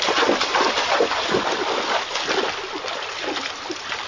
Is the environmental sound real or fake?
real